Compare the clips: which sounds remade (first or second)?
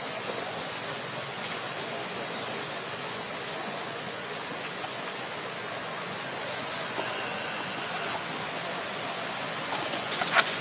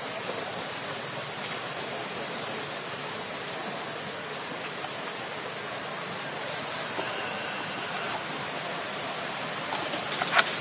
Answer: first